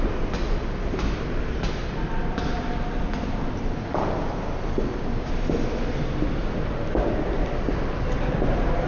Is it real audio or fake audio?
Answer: real